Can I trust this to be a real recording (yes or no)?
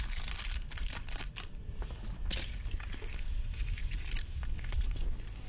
yes